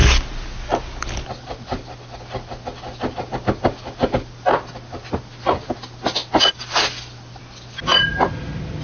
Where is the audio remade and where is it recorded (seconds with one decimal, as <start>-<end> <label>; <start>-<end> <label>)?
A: 0.0-8.8 recorded